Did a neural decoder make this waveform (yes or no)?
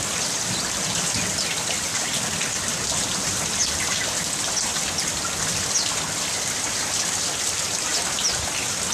no